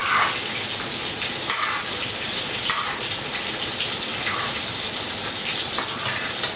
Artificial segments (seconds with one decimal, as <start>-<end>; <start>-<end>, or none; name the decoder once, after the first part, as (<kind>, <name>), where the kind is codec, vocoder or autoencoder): none